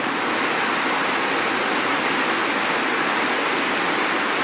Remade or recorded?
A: recorded